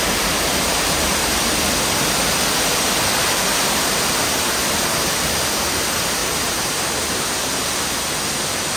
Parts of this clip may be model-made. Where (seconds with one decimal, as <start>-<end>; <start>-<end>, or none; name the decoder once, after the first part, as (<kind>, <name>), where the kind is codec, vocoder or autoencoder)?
0.7-1.4 (vocoder, BigVGAN v2); 3.5-4.1; 6.2-6.7